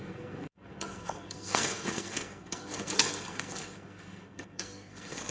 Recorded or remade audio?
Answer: remade